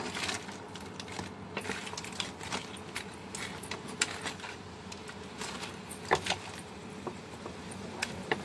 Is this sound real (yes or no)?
yes